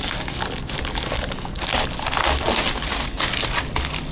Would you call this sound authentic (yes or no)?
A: yes